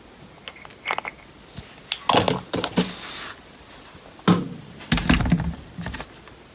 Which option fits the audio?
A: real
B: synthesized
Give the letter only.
A